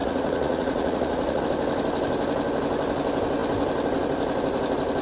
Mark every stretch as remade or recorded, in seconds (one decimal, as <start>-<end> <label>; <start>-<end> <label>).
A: 0.0-1.4 remade; 1.4-5.0 recorded